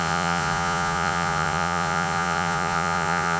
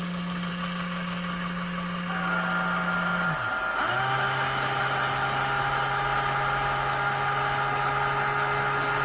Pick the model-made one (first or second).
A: first